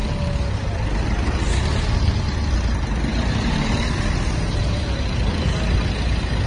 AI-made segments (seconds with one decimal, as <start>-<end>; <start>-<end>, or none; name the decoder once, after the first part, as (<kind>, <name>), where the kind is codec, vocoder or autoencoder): none